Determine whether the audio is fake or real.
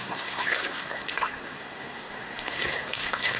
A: fake